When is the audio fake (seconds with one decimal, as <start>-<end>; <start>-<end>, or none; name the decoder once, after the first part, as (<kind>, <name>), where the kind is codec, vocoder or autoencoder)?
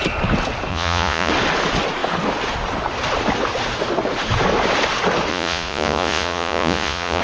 0.7-1.3 (vocoder, Vocos); 5.3-7.2